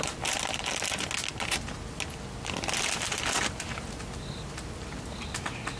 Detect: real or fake real